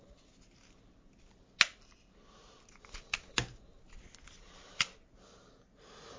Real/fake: real